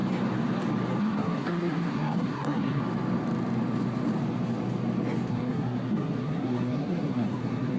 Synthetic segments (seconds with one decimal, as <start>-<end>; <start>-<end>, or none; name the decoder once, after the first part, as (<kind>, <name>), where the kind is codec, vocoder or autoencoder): 1.0-2.8 (codec, SNAC); 5.3-7.8